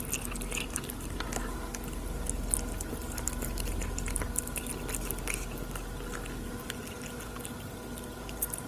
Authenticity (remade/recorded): recorded